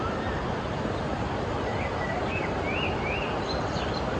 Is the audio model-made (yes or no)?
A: no